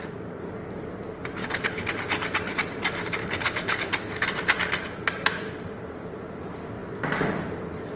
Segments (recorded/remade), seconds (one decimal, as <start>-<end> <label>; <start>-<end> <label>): 0.0-1.4 recorded; 1.4-1.9 remade; 1.9-3.2 recorded; 3.2-3.9 remade; 3.9-8.0 recorded